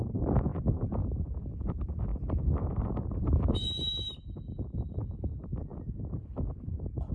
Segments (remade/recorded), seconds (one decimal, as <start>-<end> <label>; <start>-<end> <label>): 0.0-2.1 remade; 2.1-2.7 recorded; 2.7-5.7 remade; 5.7-6.5 recorded; 6.5-7.1 remade